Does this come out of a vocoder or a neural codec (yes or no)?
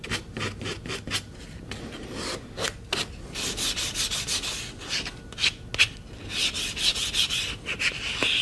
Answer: no